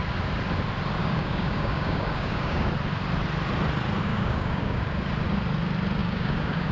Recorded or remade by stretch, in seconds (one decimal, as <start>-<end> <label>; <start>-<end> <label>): 0.0-1.0 recorded; 1.0-2.7 remade; 2.7-4.1 recorded; 4.1-4.8 remade; 4.8-6.0 recorded; 6.0-6.7 remade